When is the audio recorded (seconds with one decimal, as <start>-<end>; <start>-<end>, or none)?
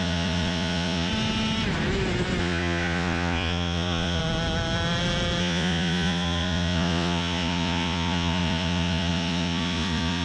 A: 1.1-2.4; 4.2-5.4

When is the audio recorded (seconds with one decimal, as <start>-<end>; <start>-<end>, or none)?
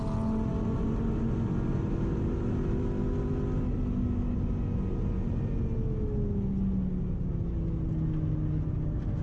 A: 0.0-9.2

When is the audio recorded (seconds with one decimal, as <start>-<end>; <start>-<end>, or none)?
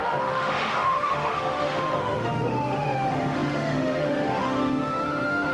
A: none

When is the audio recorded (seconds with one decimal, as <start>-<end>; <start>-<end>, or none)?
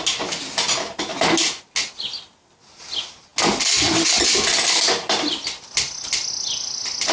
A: 0.0-7.1